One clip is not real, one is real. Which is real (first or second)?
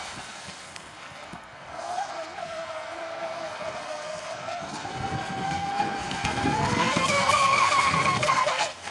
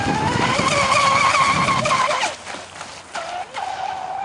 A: second